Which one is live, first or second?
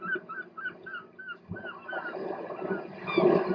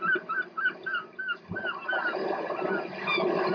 first